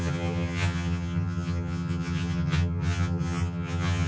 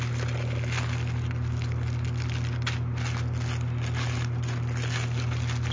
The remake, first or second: first